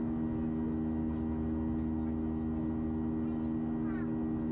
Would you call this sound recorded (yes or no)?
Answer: yes